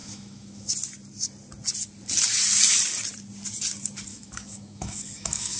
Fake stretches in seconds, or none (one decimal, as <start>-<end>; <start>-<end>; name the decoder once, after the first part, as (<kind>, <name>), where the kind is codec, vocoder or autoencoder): 0.0-0.7 (autoencoder, DAC-VAE); 4.1-5.6